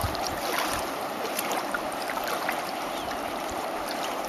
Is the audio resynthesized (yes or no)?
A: yes